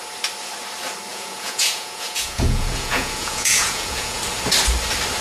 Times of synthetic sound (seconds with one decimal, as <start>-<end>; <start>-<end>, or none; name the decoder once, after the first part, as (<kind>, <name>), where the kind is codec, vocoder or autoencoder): 1.1-4.2 (vocoder, Vocos)